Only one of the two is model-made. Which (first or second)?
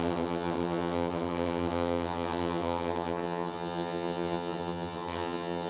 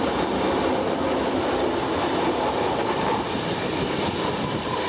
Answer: first